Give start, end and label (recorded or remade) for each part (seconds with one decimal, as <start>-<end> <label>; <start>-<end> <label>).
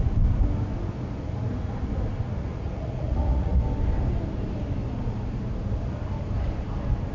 0.0-2.4 recorded; 2.4-3.6 remade; 3.6-7.1 recorded